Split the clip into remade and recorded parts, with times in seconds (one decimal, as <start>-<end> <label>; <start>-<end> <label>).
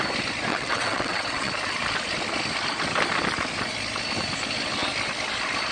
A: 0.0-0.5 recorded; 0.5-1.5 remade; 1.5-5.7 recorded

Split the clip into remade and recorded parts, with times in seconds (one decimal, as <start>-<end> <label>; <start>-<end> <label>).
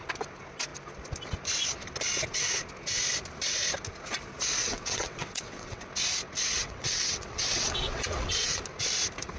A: 0.0-4.6 recorded; 4.6-5.8 remade; 5.8-6.6 recorded; 6.6-8.6 remade; 8.6-9.4 recorded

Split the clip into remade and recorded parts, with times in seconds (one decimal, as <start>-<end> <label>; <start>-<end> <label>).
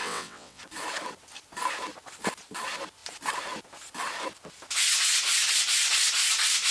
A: 0.0-0.6 remade; 0.6-6.7 recorded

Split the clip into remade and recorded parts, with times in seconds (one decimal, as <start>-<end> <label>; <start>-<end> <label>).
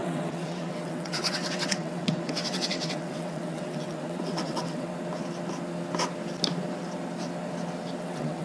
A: 0.0-4.9 remade; 4.9-8.0 recorded; 8.0-8.4 remade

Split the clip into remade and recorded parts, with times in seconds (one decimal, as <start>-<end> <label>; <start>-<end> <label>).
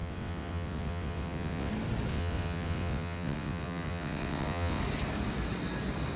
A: 0.0-1.7 remade; 1.7-2.1 recorded; 2.1-4.8 remade; 4.8-6.2 recorded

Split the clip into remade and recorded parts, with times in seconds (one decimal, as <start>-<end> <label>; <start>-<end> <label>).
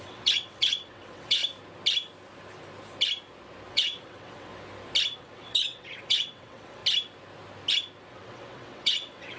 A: 0.0-1.4 remade; 1.4-3.7 recorded; 3.7-4.5 remade; 4.5-5.2 recorded; 5.2-6.8 remade; 6.8-8.1 recorded; 8.1-9.4 remade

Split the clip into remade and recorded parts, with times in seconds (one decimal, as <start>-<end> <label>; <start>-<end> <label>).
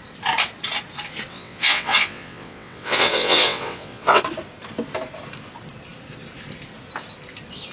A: 0.0-1.3 recorded; 1.3-4.2 remade; 4.2-7.7 recorded